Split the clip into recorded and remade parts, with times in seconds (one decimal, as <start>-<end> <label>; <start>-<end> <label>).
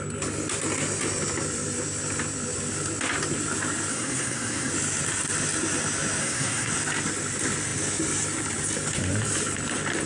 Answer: 0.0-3.9 recorded; 3.9-4.7 remade; 4.7-6.2 recorded; 6.2-6.7 remade; 6.7-10.1 recorded